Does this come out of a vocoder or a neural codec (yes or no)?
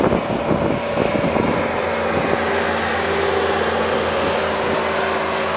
no